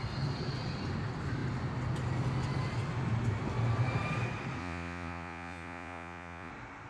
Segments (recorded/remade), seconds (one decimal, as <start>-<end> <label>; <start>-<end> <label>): 0.0-4.6 recorded; 4.6-6.5 remade; 6.5-6.9 recorded